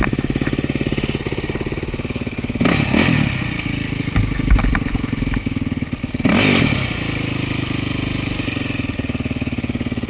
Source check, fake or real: real